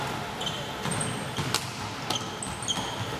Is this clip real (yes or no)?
yes